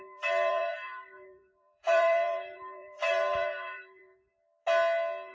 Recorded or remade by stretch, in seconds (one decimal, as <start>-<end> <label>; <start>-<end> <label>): 0.0-4.3 remade; 4.3-5.3 recorded